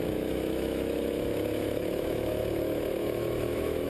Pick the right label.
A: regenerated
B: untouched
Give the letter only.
A